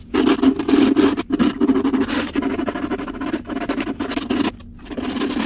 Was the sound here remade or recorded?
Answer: recorded